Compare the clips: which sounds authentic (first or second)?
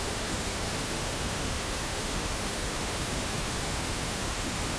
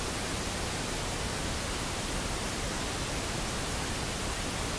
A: second